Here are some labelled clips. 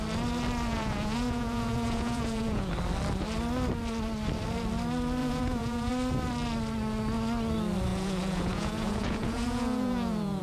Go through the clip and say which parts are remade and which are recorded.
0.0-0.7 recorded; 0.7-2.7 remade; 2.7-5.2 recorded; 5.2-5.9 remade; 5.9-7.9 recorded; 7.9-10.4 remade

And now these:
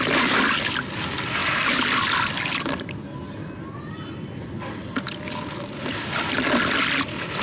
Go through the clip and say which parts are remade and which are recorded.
0.0-7.4 recorded

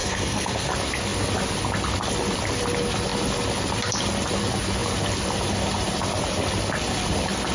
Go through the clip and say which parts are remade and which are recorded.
0.0-0.7 remade; 0.7-7.5 recorded

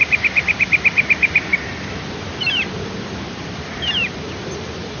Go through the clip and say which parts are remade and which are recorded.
0.0-1.5 remade; 1.5-2.1 recorded; 2.1-5.0 remade

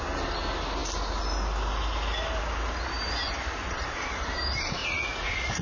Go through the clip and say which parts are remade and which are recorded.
0.0-4.8 recorded; 4.8-5.6 remade

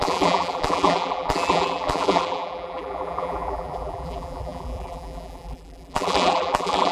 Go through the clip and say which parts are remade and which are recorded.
0.0-6.9 remade

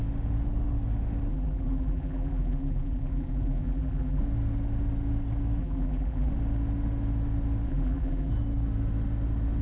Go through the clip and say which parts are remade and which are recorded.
0.0-1.3 recorded; 1.3-4.2 remade; 4.2-5.6 recorded; 5.6-6.3 remade; 6.3-7.7 recorded; 7.7-8.3 remade; 8.3-9.6 recorded

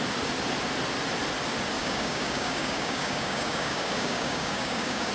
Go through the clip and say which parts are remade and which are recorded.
0.0-1.8 recorded; 1.8-5.1 remade